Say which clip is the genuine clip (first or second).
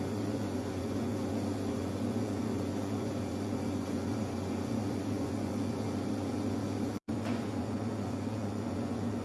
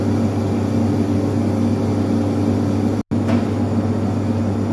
second